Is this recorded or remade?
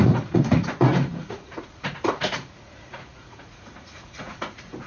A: remade